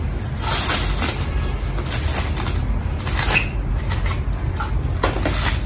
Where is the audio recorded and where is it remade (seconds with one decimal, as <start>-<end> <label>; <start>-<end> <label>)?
0.0-5.7 recorded